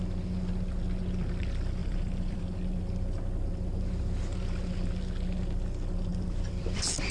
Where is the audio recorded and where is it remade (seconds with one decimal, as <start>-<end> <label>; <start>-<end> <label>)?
0.0-1.8 recorded; 1.8-2.4 remade; 2.4-6.1 recorded; 6.1-7.1 remade